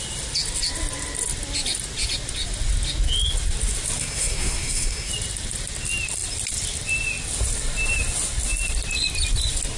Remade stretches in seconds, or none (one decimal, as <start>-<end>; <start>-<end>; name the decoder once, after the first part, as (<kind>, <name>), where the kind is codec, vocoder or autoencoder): 4.0-5.1 (codec, SNAC)